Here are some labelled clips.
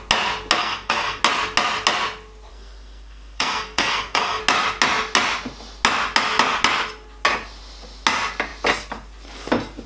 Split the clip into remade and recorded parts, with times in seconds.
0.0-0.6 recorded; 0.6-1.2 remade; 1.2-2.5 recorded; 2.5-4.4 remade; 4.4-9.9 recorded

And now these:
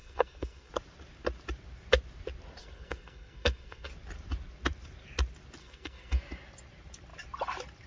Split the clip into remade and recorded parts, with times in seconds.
0.0-0.7 remade; 0.7-2.6 recorded; 2.6-3.9 remade; 3.9-5.6 recorded; 5.6-6.2 remade; 6.2-7.9 recorded

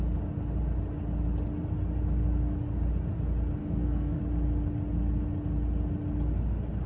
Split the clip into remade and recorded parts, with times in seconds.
0.0-3.6 recorded; 3.6-4.2 remade; 4.2-6.9 recorded

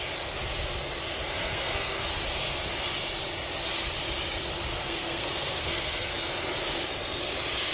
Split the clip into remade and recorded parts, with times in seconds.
0.0-1.4 recorded; 1.4-2.1 remade; 2.1-4.7 recorded; 4.7-6.1 remade; 6.1-7.7 recorded

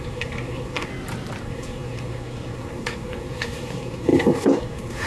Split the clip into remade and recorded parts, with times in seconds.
0.0-0.9 remade; 0.9-1.4 recorded; 1.4-5.1 remade

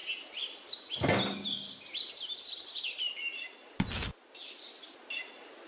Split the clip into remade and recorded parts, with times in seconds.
0.0-5.7 recorded

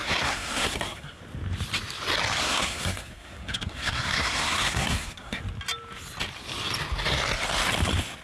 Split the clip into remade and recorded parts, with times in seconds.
0.0-1.2 remade; 1.2-2.4 recorded; 2.4-5.4 remade; 5.4-8.2 recorded